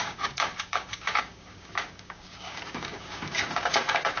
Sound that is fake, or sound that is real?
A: fake